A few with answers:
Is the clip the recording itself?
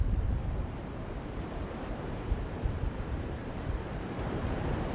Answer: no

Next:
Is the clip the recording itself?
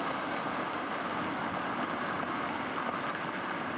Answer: yes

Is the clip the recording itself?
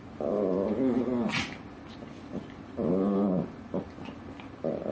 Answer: yes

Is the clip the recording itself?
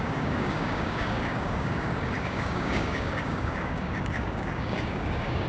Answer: no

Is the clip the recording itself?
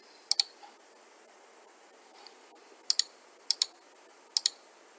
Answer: yes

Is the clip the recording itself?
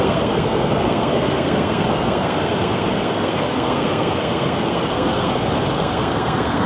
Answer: no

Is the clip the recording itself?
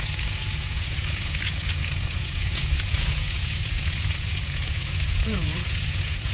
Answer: no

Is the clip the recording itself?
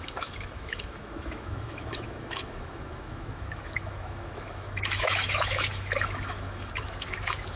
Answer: no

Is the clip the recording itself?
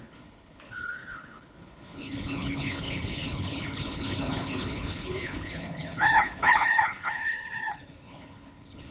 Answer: no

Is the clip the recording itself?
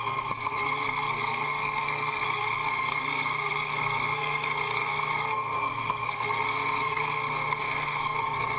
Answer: no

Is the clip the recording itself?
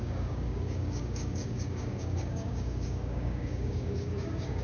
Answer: no